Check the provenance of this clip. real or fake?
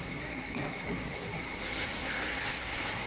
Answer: fake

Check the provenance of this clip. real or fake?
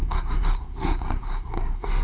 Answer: fake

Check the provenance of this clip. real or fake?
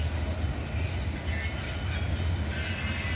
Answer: real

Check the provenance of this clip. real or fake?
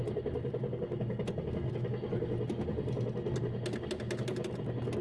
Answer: real